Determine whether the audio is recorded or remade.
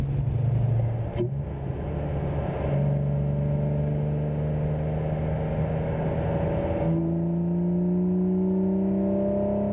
recorded